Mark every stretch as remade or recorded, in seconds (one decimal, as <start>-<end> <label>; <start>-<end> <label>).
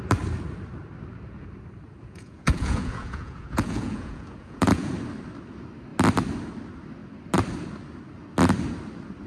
0.0-2.0 recorded; 2.0-4.9 remade; 4.9-9.3 recorded